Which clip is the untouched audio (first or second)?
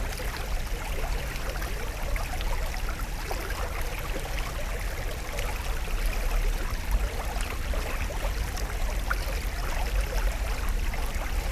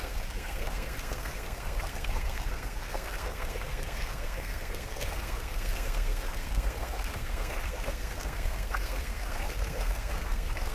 first